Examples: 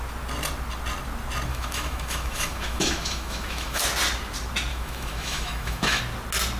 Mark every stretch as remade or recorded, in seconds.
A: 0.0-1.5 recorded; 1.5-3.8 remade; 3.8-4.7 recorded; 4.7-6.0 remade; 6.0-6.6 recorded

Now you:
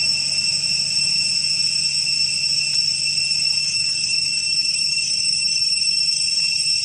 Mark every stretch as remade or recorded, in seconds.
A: 0.0-3.6 recorded; 3.6-6.2 remade; 6.2-6.8 recorded

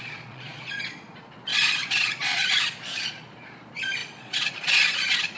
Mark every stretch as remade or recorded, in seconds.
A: 0.0-5.4 remade

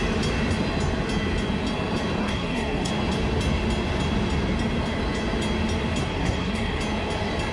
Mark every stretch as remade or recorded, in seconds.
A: 0.0-2.2 recorded; 2.2-2.9 remade; 2.9-6.0 recorded; 6.0-6.8 remade; 6.8-7.5 recorded